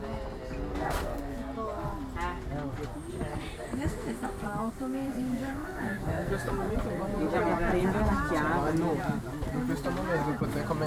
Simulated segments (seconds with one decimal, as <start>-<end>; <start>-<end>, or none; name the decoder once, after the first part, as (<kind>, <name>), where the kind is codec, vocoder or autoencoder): 0.7-1.3 (codec, SNAC); 3.3-6.7